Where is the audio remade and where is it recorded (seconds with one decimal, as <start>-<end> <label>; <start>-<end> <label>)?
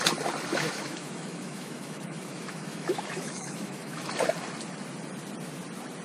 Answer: 0.0-0.5 recorded; 0.5-4.1 remade; 4.1-6.0 recorded